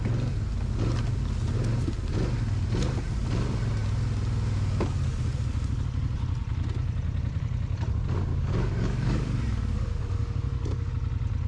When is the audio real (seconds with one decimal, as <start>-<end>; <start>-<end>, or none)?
0.0-8.3; 10.9-11.5